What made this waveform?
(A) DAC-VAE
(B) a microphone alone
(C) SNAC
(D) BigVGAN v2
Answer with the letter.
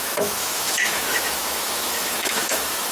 A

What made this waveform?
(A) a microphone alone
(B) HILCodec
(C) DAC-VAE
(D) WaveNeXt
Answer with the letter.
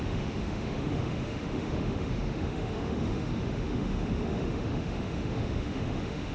C